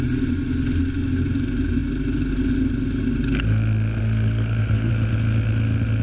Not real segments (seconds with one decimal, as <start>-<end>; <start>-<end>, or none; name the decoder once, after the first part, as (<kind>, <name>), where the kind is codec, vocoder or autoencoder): 4.0-4.9 (codec, SNAC)